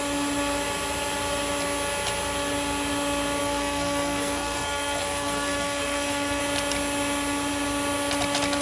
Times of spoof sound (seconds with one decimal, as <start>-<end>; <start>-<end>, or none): 3.4-6.4